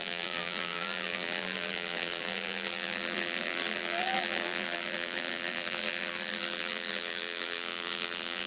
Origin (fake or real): fake